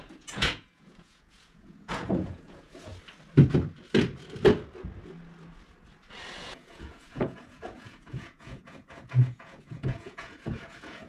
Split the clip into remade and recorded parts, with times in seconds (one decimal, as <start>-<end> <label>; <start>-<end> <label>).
0.0-2.9 remade; 2.9-6.4 recorded; 6.4-11.1 remade